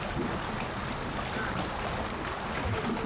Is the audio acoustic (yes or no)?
yes